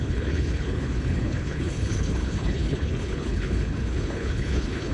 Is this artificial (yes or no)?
yes